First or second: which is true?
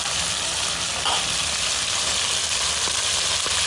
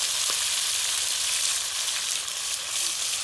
first